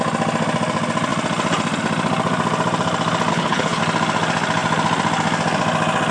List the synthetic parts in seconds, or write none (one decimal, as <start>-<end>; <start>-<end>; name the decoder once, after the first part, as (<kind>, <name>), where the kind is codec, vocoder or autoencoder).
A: 3.3-3.8 (codec, HILCodec)